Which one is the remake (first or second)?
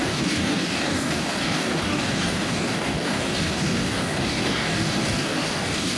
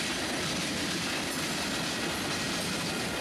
first